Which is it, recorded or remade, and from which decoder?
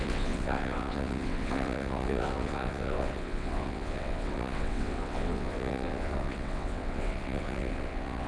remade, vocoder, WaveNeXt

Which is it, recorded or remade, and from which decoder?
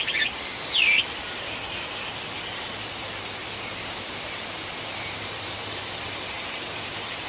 recorded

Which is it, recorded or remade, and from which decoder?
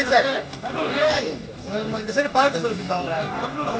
remade, codec, DAC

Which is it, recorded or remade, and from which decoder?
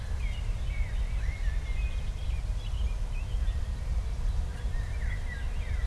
recorded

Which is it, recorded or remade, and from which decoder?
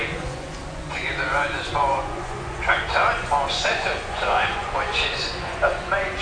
remade, vocoder, Vocos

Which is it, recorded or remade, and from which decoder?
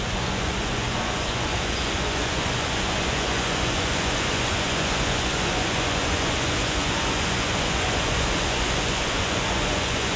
remade, vocoder, Vocos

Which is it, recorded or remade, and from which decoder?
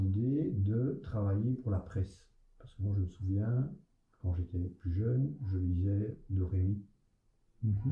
recorded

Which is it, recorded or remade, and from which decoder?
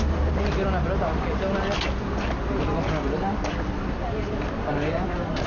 recorded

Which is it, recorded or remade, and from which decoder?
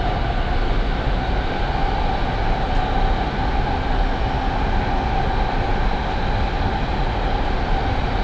recorded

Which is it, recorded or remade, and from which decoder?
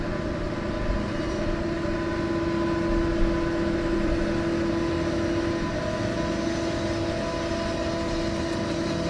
recorded